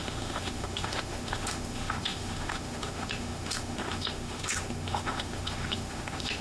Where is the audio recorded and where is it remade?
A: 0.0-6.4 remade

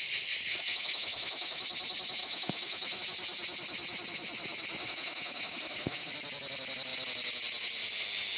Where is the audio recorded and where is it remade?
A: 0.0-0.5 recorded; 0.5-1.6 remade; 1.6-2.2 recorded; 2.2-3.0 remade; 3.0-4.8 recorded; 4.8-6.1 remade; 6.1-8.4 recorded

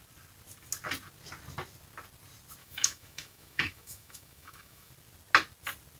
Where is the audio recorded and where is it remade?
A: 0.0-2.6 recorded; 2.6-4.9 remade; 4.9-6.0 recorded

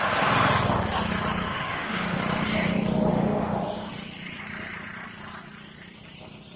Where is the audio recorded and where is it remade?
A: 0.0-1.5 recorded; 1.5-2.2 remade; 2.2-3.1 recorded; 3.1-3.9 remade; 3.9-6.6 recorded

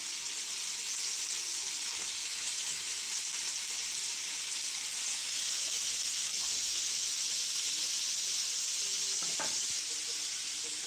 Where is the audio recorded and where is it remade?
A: 0.0-2.2 recorded; 2.2-3.0 remade; 3.0-5.1 recorded; 5.1-7.1 remade; 7.1-10.9 recorded

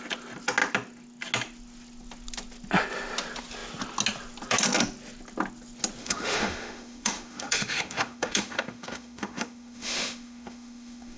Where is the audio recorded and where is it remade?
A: 0.0-6.0 recorded; 6.0-11.2 remade